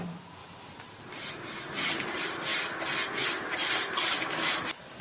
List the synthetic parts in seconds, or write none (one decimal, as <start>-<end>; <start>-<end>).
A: 0.0-2.5; 3.1-5.0